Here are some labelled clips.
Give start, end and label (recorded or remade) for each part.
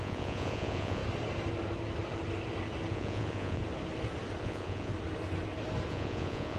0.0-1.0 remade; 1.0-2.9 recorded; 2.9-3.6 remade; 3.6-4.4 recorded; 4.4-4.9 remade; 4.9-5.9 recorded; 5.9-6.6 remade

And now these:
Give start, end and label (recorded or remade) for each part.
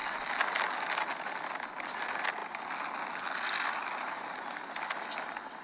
0.0-5.6 recorded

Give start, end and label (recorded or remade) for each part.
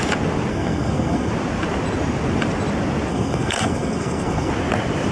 0.0-0.5 recorded; 0.5-1.3 remade; 1.3-3.1 recorded; 3.1-4.5 remade; 4.5-5.1 recorded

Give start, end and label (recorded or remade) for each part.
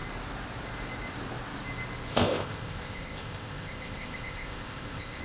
0.0-2.1 recorded; 2.1-5.2 remade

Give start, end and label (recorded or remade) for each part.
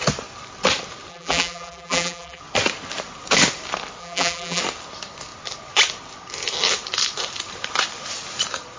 0.0-1.1 recorded; 1.1-2.4 remade; 2.4-4.0 recorded; 4.0-4.6 remade; 4.6-8.8 recorded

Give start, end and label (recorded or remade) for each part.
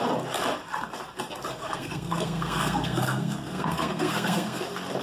0.0-1.6 recorded; 1.6-4.6 remade; 4.6-5.0 recorded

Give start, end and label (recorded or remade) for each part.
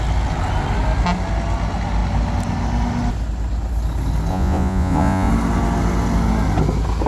0.0-4.3 recorded; 4.3-5.3 remade; 5.3-7.1 recorded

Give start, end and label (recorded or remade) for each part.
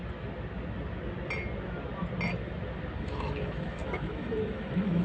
0.0-3.0 recorded; 3.0-5.0 remade